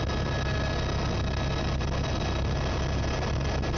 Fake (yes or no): no